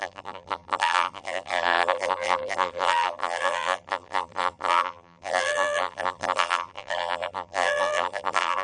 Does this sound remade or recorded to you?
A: remade